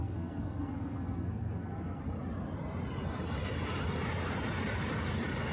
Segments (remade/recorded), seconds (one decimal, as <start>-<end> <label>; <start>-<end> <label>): 0.0-2.0 remade; 2.0-5.5 recorded